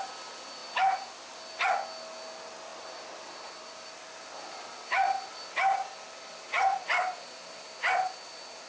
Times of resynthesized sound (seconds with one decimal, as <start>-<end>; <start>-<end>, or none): 0.6-1.5; 2.7-7.7